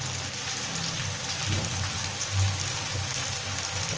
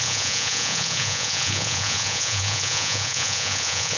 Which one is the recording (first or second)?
first